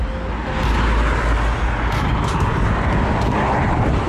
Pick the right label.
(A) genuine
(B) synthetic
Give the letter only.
A